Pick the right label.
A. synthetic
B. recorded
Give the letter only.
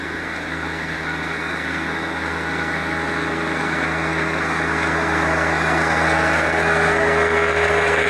A